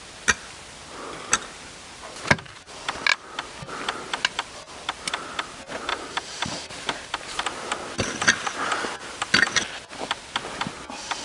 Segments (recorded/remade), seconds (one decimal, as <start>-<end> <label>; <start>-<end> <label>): 0.0-5.9 recorded; 5.9-6.7 remade; 6.7-11.2 recorded